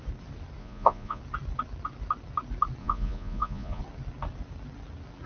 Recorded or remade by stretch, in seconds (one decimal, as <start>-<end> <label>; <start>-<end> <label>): 0.0-0.6 recorded; 0.6-1.2 remade; 1.2-2.8 recorded; 2.8-3.8 remade; 3.8-5.3 recorded